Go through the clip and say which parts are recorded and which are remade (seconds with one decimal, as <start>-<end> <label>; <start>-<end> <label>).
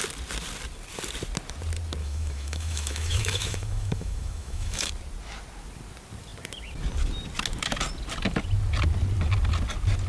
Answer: 0.0-2.0 recorded; 2.0-4.9 remade; 4.9-10.1 recorded